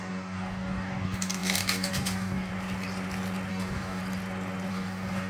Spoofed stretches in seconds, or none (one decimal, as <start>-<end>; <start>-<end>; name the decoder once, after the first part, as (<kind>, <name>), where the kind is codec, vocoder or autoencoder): 0.0-2.5 (codec, DAC); 3.5-4.0; 4.7-5.3